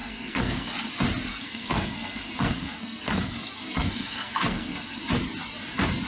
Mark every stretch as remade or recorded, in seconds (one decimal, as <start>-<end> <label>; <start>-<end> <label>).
0.0-0.7 remade; 0.7-1.3 recorded; 1.3-5.0 remade; 5.0-6.1 recorded